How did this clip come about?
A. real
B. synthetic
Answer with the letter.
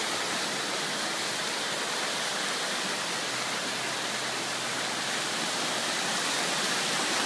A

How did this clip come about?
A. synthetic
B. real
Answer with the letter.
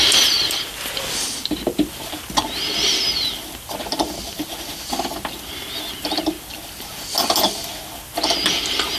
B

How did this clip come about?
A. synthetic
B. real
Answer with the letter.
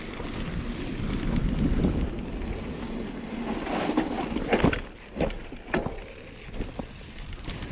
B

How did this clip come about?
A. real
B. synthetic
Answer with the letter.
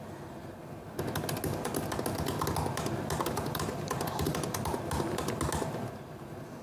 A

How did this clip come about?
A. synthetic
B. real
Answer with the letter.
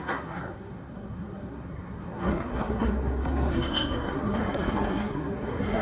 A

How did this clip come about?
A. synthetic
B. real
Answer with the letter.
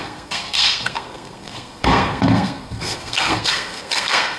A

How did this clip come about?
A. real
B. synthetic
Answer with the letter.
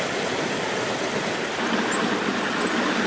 A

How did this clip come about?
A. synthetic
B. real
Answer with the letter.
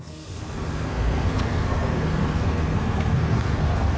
A